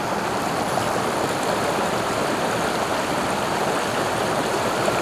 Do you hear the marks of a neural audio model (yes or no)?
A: no